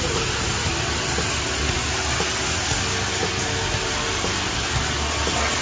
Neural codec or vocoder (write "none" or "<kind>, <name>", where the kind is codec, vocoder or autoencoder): none